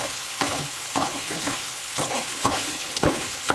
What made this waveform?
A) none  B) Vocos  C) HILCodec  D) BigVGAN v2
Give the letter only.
C